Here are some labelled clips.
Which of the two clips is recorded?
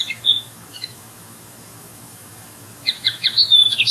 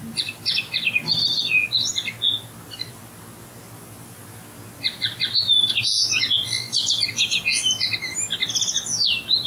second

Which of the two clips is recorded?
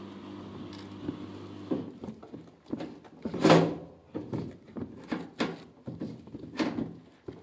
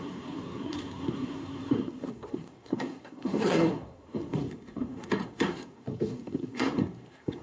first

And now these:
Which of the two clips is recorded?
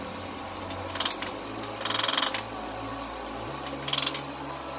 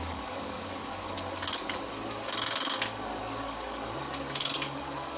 first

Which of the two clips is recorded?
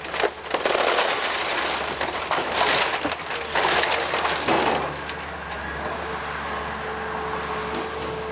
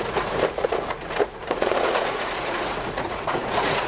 first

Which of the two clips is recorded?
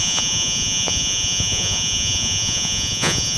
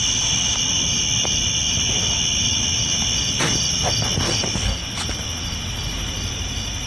second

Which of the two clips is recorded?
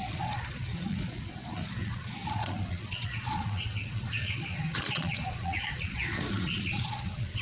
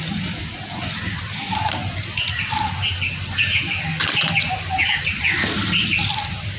second